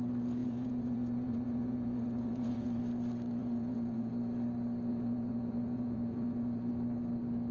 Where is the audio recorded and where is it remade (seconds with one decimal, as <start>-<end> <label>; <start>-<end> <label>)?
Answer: 0.0-0.4 recorded; 0.4-2.8 remade; 2.8-3.4 recorded; 3.4-4.1 remade; 4.1-4.9 recorded; 4.9-6.7 remade; 6.7-7.5 recorded